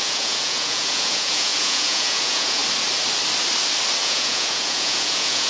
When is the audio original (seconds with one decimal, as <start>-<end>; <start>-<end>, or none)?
2.6-4.0